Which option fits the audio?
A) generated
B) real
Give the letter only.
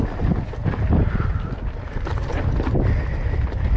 B